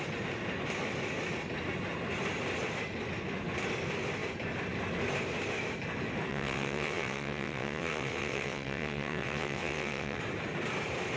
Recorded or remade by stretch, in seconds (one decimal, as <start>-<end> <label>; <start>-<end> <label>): 0.0-6.3 recorded; 6.3-10.2 remade; 10.2-11.2 recorded